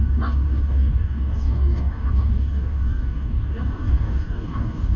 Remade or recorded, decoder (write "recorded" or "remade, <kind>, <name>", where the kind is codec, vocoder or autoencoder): remade, codec, DAC